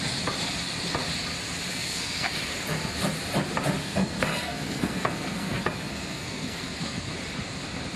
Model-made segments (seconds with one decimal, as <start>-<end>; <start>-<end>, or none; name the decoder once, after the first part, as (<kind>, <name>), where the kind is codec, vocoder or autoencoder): 1.7-2.3 (codec, SNAC); 3.8-7.1